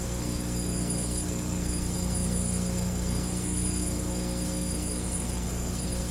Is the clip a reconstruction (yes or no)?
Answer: yes